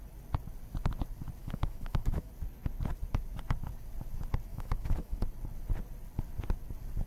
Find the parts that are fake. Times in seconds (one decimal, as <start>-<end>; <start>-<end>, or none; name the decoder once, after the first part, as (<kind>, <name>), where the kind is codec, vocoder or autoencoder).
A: 1.4-2.3 (autoencoder, DAC-VAE); 4.5-5.2